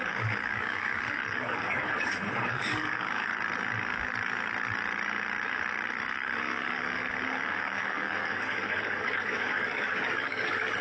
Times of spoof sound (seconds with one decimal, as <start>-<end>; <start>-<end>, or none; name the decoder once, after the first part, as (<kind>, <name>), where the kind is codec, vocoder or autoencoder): 0.0-3.3 (codec, DAC); 5.9-7.0; 7.5-10.8